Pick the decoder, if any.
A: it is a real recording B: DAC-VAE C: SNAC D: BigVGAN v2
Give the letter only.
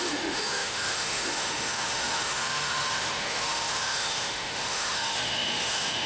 B